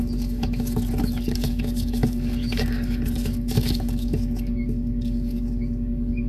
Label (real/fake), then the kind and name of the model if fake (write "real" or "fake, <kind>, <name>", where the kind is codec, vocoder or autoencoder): fake, codec, DAC